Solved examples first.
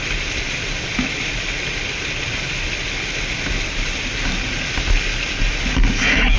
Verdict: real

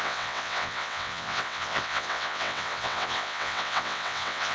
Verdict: fake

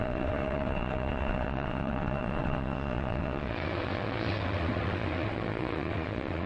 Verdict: fake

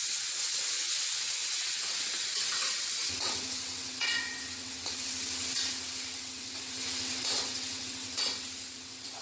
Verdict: fake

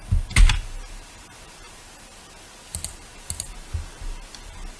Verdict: real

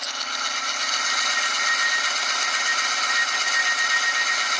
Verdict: real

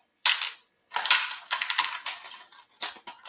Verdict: real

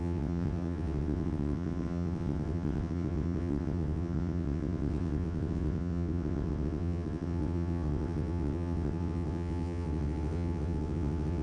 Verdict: fake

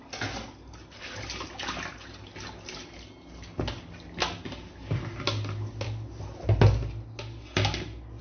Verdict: real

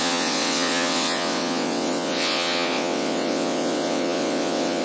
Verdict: fake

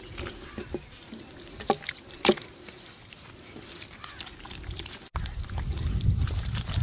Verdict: real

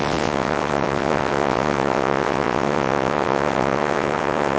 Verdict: fake